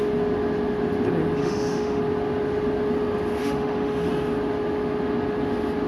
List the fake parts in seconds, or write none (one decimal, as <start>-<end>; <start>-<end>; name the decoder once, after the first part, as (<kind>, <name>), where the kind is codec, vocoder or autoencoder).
1.4-2.0 (autoencoder, DAC-VAE); 3.4-4.1